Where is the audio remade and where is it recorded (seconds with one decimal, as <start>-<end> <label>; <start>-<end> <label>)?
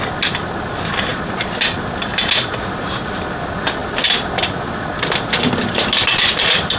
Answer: 0.0-6.8 recorded